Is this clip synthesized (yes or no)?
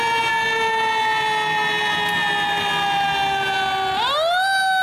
no